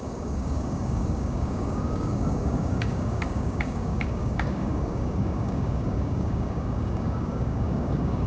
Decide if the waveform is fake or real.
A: fake